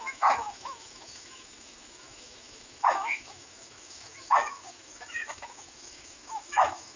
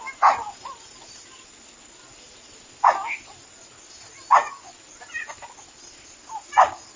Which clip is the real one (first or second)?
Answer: second